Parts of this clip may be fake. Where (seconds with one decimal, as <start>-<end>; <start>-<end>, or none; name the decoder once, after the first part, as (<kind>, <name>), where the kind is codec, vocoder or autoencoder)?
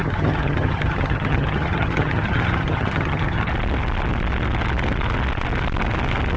0.0-3.5 (vocoder, HiFi-GAN)